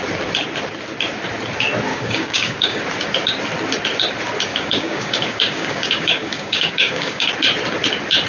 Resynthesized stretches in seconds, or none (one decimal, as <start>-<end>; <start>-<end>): 1.9-2.8; 4.5-7.3